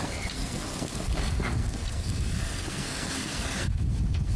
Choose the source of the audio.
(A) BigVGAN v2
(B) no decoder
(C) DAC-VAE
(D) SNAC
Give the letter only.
D